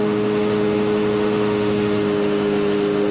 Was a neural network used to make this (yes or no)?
yes